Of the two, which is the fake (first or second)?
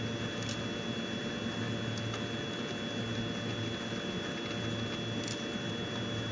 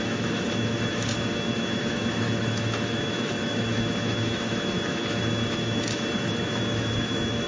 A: second